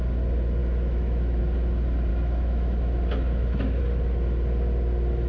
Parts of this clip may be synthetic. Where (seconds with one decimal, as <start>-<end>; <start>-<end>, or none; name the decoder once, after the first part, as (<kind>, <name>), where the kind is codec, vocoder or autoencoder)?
0.6-1.4 (autoencoder, DAC-VAE); 2.1-3.8